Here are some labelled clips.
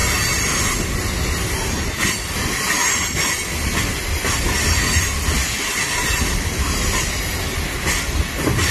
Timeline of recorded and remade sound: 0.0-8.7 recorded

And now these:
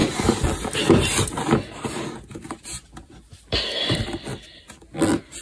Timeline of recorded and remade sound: 0.0-5.4 recorded

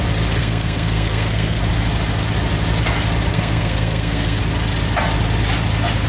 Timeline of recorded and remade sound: 0.0-0.4 recorded; 0.4-1.6 remade; 1.6-3.3 recorded; 3.3-4.4 remade; 4.4-6.1 recorded